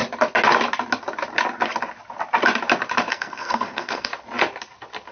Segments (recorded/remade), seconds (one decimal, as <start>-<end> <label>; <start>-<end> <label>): 0.0-3.1 recorded; 3.1-4.1 remade; 4.1-5.1 recorded